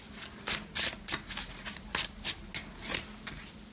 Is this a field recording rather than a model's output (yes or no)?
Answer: yes